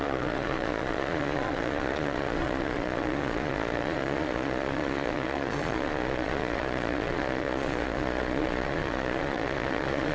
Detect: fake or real fake